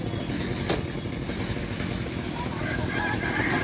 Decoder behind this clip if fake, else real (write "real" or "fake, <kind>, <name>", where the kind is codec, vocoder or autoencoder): real